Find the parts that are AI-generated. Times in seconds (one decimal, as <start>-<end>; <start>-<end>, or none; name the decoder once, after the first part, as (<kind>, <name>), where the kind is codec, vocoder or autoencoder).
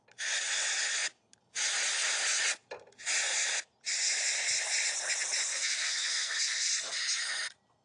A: 5.5-6.7 (codec, SNAC)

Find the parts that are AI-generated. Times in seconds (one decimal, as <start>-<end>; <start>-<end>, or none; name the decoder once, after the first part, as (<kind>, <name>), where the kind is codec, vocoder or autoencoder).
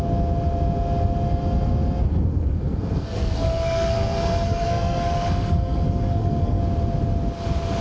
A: 2.1-6.6 (codec, SNAC)